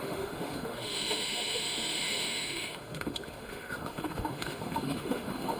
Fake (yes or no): yes